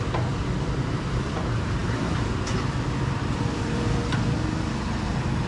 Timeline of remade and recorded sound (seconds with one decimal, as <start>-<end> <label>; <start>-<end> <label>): 0.0-5.5 remade